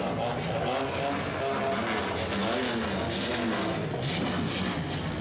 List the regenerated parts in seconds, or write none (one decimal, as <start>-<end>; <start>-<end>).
none